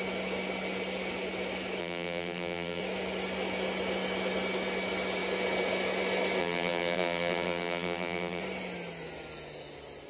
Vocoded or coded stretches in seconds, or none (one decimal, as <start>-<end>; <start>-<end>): 1.8-2.8; 6.4-8.4